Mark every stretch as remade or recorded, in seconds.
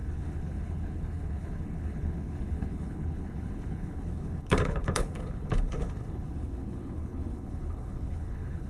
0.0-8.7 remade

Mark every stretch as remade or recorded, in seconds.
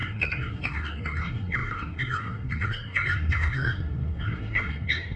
0.0-5.2 remade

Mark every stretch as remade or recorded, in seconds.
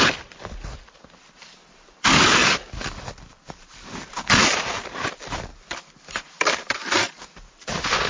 0.0-5.5 remade; 5.5-6.1 recorded; 6.1-8.1 remade